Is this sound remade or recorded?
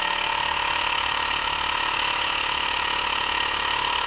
remade